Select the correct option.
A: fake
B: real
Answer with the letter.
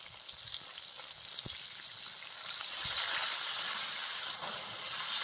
B